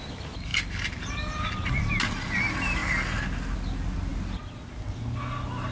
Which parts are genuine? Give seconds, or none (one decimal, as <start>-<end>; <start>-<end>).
0.0-5.7